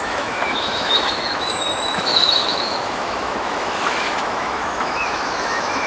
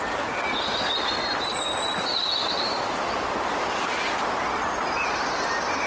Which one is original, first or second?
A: second